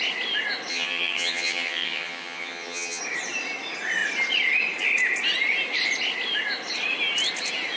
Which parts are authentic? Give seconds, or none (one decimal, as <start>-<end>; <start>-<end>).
0.0-0.7; 3.0-7.8